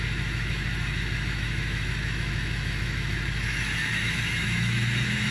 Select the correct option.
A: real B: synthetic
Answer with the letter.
B